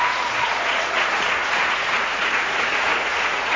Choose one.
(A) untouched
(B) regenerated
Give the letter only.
B